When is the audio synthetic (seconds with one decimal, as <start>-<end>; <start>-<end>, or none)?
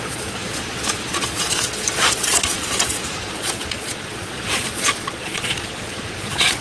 0.0-6.6